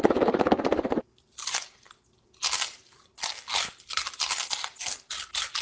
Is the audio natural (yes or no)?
yes